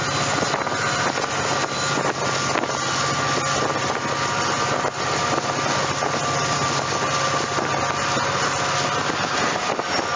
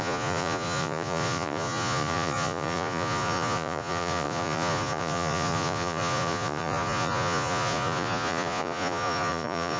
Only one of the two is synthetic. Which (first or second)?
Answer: second